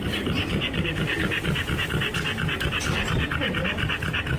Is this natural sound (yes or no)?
yes